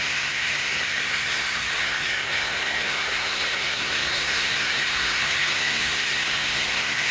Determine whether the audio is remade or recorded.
remade